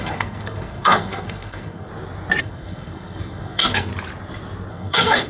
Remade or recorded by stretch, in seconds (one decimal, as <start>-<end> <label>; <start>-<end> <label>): 0.0-1.9 remade; 1.9-2.4 recorded; 2.4-3.9 remade; 3.9-4.7 recorded; 4.7-5.3 remade